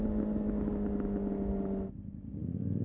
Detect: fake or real real